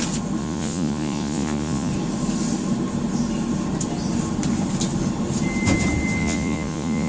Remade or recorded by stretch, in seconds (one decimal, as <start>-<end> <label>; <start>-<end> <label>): 0.0-0.4 recorded; 0.4-1.9 remade; 1.9-6.2 recorded; 6.2-7.1 remade